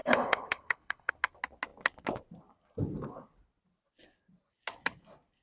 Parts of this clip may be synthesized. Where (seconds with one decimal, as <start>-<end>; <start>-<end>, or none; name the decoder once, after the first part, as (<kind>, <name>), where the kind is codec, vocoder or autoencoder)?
0.0-1.1 (codec, HILCodec)